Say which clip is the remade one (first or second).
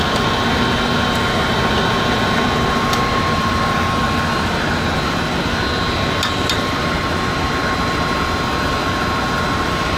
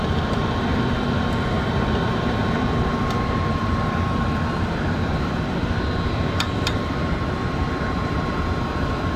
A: second